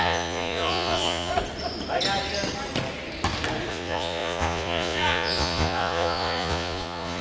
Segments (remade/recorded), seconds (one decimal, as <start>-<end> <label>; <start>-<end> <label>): 0.0-1.3 remade; 1.3-3.7 recorded; 3.7-7.2 remade

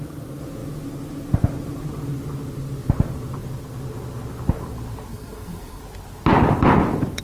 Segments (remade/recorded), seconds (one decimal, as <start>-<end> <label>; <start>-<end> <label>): 0.0-5.1 recorded; 5.1-5.8 remade; 5.8-7.2 recorded